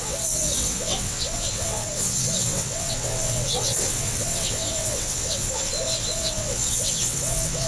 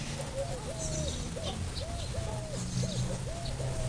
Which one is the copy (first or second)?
first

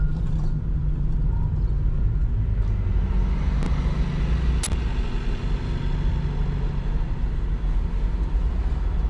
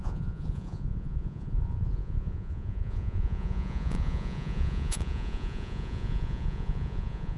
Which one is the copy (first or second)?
second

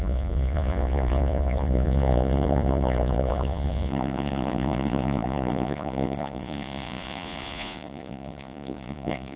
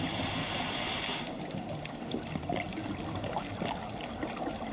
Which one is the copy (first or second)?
first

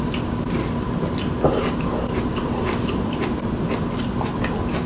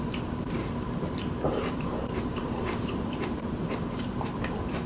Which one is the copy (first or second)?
second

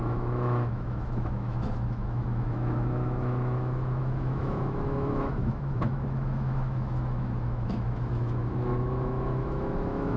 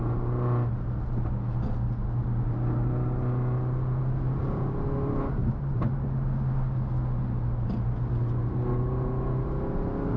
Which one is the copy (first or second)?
first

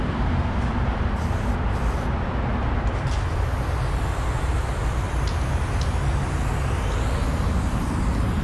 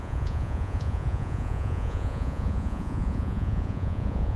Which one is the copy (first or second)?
second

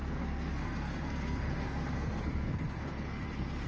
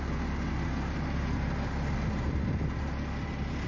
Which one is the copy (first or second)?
first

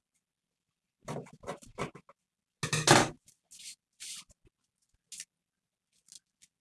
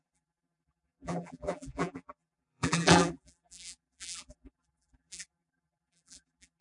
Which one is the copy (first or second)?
second